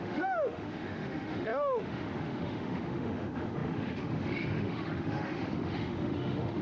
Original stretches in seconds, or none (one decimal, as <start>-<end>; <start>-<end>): none